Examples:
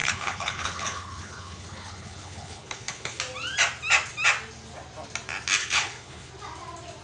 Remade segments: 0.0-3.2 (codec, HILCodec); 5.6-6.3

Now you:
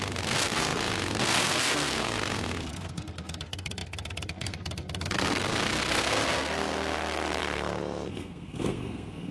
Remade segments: 0.0-9.3 (codec, SNAC)

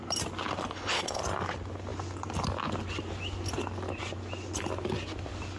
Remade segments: 0.6-1.2 (codec, HILCodec)